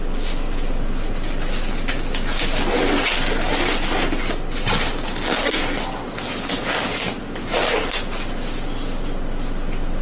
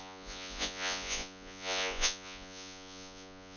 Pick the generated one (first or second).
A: second